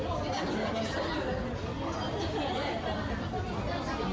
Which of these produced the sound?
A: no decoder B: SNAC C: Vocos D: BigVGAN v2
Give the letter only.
A